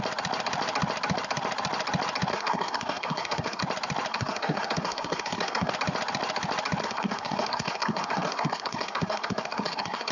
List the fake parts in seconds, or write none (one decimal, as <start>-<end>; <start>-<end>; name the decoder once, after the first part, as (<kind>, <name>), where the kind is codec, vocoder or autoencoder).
2.3-3.6 (codec, SNAC); 4.1-5.7; 6.8-10.1